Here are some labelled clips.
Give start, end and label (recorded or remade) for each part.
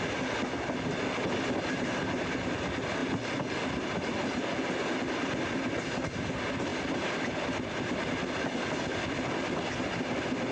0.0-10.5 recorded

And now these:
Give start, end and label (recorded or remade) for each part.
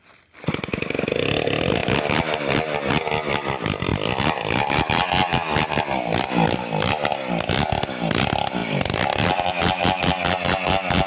0.0-8.6 recorded; 8.6-9.5 remade; 9.5-11.1 recorded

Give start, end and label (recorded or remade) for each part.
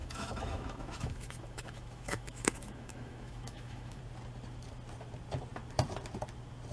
0.0-4.0 remade; 4.0-6.7 recorded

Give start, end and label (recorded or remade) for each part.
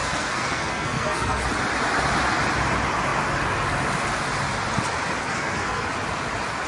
0.0-1.4 remade; 1.4-5.2 recorded; 5.2-5.9 remade; 5.9-6.7 recorded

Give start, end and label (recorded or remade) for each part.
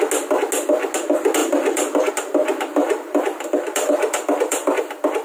0.0-1.4 recorded; 1.4-2.1 remade; 2.1-2.8 recorded; 2.8-4.8 remade; 4.8-5.2 recorded